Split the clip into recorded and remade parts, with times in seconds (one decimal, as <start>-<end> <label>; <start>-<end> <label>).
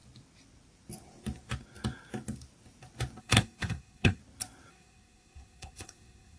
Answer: 0.0-3.2 recorded; 3.2-4.2 remade; 4.2-4.7 recorded; 4.7-6.4 remade